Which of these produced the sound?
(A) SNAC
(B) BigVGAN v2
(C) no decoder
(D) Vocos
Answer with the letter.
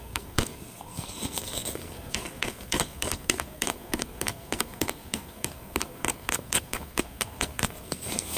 A